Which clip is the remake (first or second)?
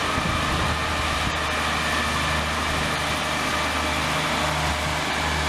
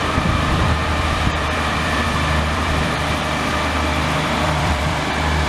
second